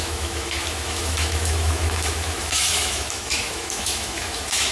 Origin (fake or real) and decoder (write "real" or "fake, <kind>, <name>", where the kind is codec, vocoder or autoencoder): fake, autoencoder, DAC-VAE